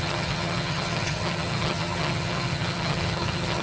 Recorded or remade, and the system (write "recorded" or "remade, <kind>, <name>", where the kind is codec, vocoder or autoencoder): remade, vocoder, HiFi-GAN